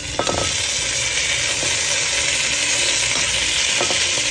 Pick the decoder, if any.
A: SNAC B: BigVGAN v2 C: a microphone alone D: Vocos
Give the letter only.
C